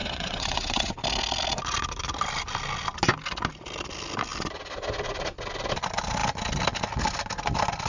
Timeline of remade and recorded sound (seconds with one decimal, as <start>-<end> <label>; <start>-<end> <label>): 0.0-0.9 remade; 0.9-7.9 recorded